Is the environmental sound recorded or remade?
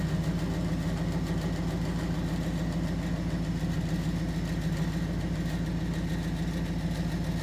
recorded